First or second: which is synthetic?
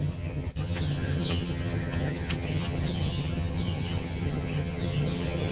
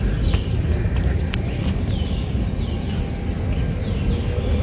first